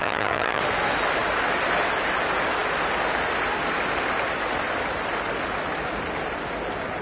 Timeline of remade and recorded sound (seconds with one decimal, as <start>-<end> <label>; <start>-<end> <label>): 0.0-0.6 remade; 0.6-7.0 recorded